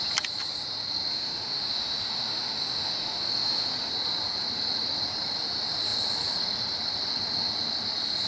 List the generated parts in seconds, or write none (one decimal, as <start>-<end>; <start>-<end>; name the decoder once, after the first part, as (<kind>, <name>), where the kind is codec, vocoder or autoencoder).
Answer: 1.1-3.9 (autoencoder, DAC-VAE)